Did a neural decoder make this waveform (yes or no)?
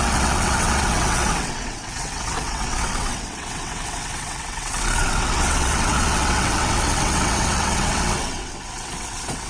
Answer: yes